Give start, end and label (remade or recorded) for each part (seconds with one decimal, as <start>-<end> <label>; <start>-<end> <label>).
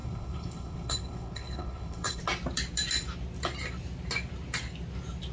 0.0-2.2 remade; 2.2-5.3 recorded